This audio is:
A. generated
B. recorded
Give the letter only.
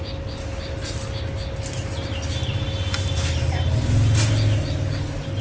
B